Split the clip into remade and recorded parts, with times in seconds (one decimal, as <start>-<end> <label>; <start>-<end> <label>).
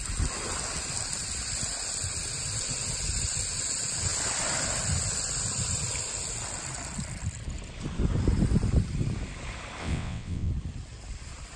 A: 0.0-9.8 recorded; 9.8-10.5 remade; 10.5-11.6 recorded